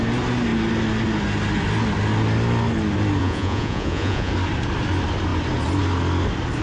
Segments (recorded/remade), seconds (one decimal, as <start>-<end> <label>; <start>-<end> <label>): 0.0-3.2 recorded; 3.2-4.3 remade; 4.3-6.6 recorded